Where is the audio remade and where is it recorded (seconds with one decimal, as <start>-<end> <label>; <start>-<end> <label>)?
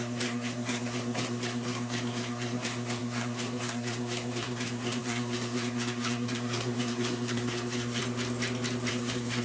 0.0-8.0 remade; 8.0-8.9 recorded; 8.9-9.4 remade